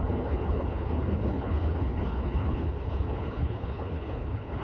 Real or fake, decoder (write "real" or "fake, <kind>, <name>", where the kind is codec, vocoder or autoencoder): fake, codec, HILCodec